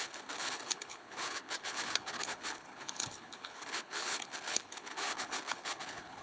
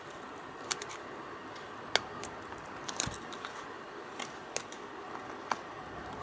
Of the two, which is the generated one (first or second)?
first